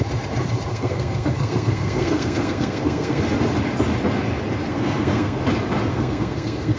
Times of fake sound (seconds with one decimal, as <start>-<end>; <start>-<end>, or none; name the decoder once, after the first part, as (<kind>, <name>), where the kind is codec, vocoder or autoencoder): 0.7-3.2 (codec, SNAC); 4.7-5.4; 5.9-6.8